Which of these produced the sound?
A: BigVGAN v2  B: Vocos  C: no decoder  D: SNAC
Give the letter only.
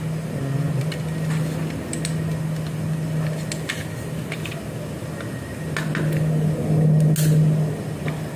C